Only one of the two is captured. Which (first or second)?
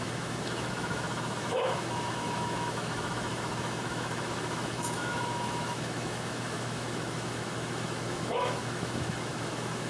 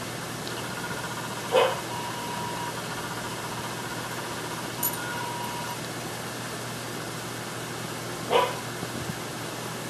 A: second